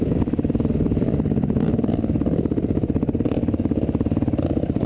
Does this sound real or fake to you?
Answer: real